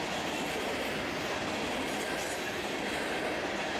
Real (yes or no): yes